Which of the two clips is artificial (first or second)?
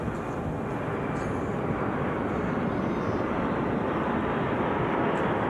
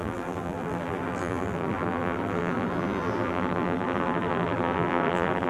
second